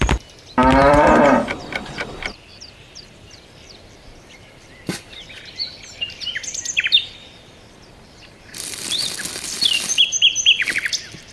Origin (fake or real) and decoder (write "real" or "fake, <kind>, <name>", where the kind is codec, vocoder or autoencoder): fake, vocoder, BigVGAN v2